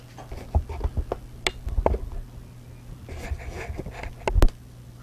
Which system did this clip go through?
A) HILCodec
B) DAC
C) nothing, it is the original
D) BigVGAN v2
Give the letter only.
C